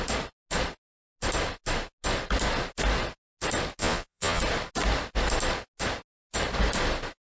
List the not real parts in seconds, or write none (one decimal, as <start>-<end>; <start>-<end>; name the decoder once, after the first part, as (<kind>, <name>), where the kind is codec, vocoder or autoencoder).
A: 3.8-4.4 (vocoder, Vocos)